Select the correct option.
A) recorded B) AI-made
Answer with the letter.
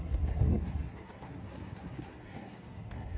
B